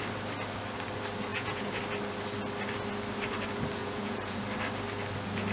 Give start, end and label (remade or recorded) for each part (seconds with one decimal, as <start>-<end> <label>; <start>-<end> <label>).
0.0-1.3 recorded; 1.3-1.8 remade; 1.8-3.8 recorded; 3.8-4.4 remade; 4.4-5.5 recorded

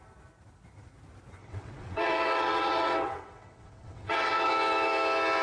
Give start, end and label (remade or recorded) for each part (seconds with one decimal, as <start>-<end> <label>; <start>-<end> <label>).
0.0-1.4 recorded; 1.4-4.5 remade; 4.5-5.4 recorded

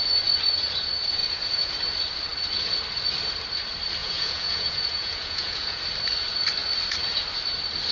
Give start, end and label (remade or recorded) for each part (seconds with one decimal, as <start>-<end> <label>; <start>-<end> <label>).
0.0-1.2 recorded; 1.2-1.7 remade; 1.7-4.0 recorded; 4.0-5.8 remade; 5.8-7.9 recorded

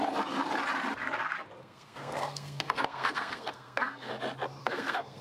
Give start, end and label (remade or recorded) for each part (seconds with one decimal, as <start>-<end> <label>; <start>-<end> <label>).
0.0-1.6 recorded; 1.6-4.1 remade; 4.1-4.6 recorded; 4.6-5.2 remade

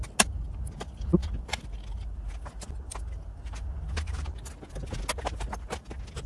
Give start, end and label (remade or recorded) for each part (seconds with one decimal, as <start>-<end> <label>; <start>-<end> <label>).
0.0-6.3 recorded

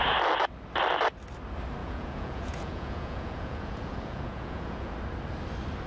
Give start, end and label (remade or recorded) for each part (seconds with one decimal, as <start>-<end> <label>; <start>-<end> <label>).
0.0-1.8 recorded; 1.8-4.9 remade; 4.9-5.9 recorded